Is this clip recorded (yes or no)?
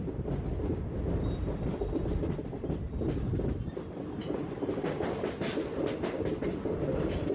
yes